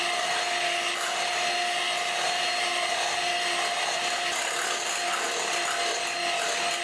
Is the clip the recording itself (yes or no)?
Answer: yes